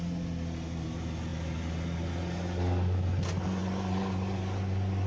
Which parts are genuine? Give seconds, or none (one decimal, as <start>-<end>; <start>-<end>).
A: 0.0-5.1